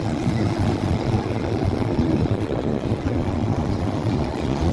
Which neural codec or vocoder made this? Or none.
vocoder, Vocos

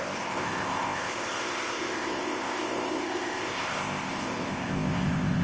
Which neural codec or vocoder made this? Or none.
codec, ZipCodec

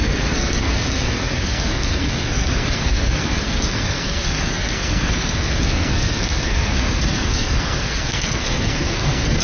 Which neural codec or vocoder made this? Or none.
codec, SNAC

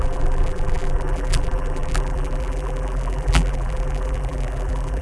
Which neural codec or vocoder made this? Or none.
vocoder, BigVGAN v2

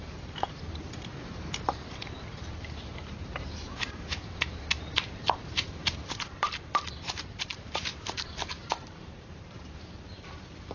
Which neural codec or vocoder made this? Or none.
vocoder, BigVGAN v2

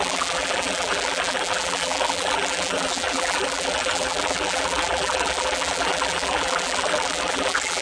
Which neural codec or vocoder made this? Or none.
vocoder, BigVGAN v2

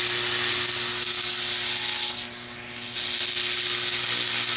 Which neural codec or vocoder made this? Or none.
none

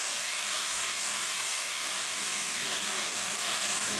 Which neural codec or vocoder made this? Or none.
codec, DAC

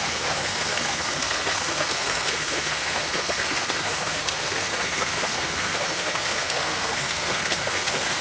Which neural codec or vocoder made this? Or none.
codec, SNAC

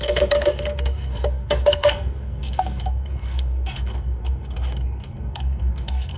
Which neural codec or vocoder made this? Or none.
codec, SNAC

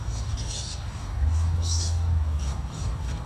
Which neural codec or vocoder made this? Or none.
codec, DAC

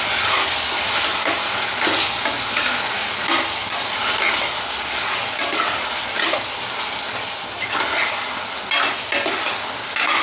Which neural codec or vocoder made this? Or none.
none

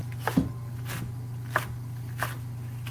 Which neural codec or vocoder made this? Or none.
none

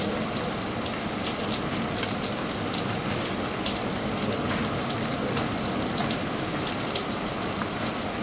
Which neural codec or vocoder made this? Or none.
none